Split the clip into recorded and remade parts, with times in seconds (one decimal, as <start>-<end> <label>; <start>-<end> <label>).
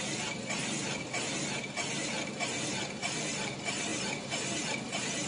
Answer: 0.0-0.6 remade; 0.6-3.0 recorded; 3.0-3.9 remade; 3.9-4.7 recorded; 4.7-5.3 remade